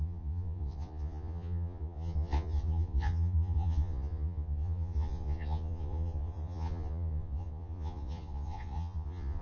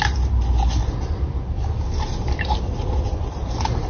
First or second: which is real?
second